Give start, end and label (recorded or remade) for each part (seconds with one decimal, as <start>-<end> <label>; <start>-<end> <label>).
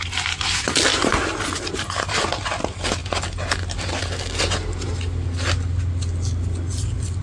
0.0-0.9 recorded; 0.9-1.4 remade; 1.4-7.2 recorded